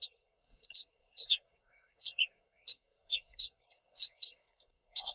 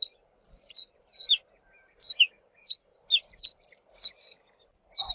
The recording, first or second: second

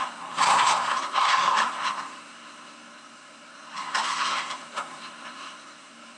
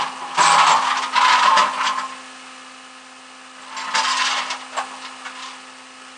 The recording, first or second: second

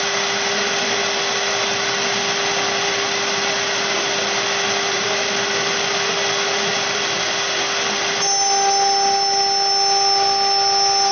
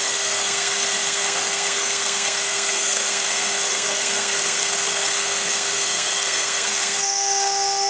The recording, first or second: first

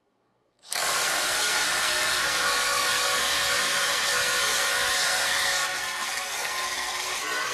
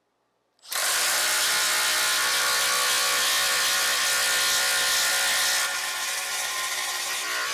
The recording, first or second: second